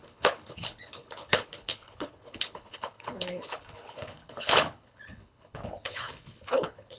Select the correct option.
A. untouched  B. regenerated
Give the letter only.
B